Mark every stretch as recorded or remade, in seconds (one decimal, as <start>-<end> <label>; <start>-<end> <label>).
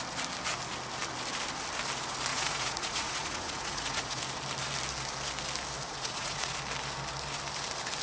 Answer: 0.0-2.3 recorded; 2.3-4.2 remade; 4.2-5.9 recorded; 5.9-6.5 remade; 6.5-8.0 recorded